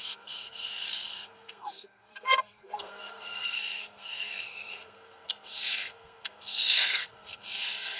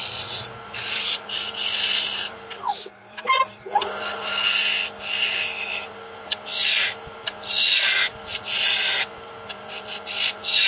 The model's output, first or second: first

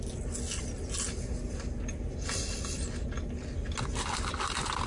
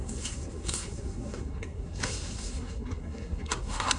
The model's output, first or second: second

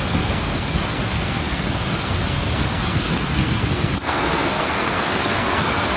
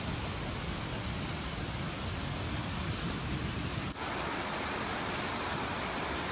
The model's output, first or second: first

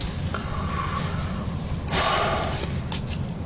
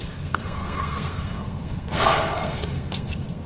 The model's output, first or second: second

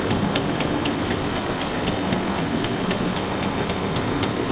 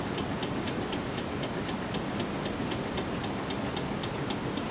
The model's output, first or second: first